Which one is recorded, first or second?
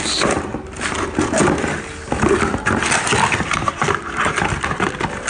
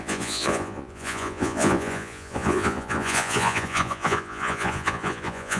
first